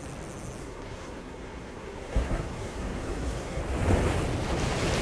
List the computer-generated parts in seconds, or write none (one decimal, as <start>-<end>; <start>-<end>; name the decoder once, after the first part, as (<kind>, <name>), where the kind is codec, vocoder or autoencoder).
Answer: 0.6-3.6 (codec, SNAC)